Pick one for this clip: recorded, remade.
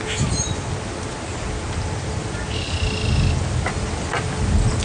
recorded